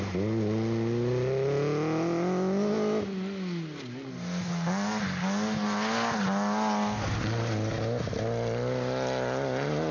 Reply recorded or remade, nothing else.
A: recorded